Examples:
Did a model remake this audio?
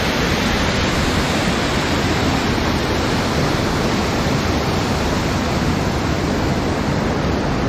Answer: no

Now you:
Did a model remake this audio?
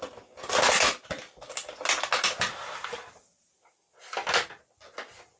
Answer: no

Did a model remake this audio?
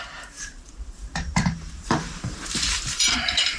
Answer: yes